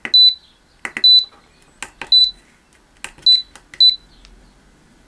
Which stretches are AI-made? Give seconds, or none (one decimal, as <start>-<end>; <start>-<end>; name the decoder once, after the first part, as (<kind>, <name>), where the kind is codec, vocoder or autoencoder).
none

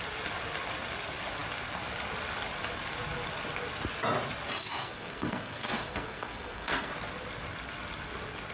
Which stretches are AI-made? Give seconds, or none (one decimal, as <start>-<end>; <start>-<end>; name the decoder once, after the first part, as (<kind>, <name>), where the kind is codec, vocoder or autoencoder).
4.6-6.9 (codec, SNAC)